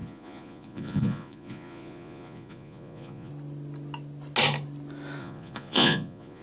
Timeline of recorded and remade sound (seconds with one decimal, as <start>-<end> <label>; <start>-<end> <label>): 0.0-3.3 remade; 3.3-5.2 recorded; 5.2-6.4 remade